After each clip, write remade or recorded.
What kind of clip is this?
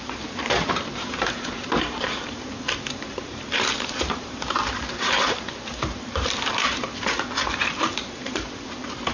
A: remade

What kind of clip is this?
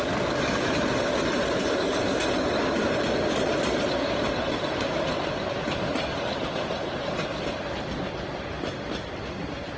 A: recorded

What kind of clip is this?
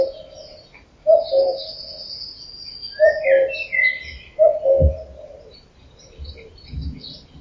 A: recorded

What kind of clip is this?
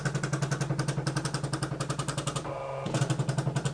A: recorded